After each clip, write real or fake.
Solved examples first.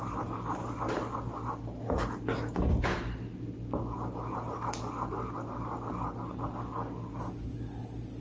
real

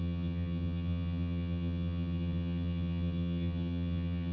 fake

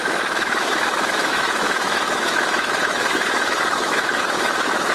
fake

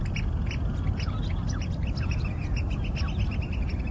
real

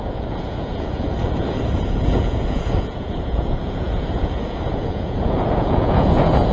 fake